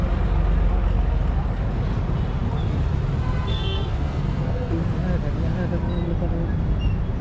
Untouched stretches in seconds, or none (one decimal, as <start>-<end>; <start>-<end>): 0.0-3.5; 4.7-7.2

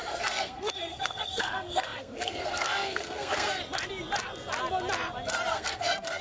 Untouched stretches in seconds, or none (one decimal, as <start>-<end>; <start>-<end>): 3.6-5.5

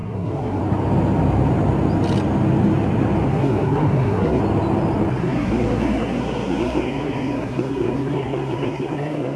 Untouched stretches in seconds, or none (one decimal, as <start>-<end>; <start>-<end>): 0.6-3.3; 4.4-5.2

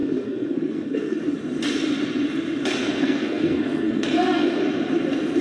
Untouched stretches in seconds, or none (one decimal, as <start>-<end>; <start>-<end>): 1.2-2.8; 4.6-5.4

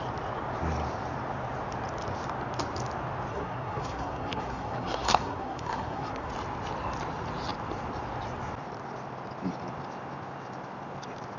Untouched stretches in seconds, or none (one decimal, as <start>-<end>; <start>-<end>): 0.0-3.3; 6.3-11.4